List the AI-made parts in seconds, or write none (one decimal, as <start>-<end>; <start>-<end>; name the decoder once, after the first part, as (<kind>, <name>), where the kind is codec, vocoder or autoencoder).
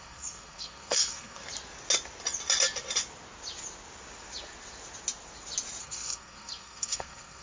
0.0-1.4 (codec, SNAC); 5.8-7.4